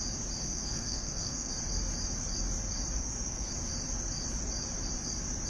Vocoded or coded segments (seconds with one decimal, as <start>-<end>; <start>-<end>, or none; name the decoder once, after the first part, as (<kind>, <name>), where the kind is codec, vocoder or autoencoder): 0.4-1.5 (codec, SNAC); 3.0-3.5